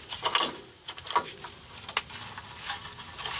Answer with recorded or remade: recorded